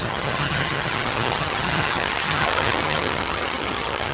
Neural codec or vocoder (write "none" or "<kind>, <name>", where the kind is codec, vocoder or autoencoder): vocoder, HiFi-GAN